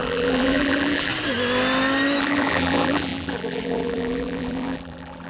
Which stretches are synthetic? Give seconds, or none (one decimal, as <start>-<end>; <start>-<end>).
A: 0.0-1.1; 2.2-5.3